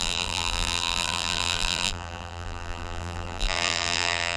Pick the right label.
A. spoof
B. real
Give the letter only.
A